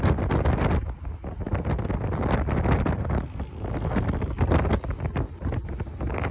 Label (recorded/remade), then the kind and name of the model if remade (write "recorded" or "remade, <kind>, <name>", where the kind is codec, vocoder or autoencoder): recorded